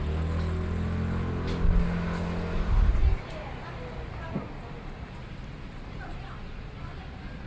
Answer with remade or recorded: recorded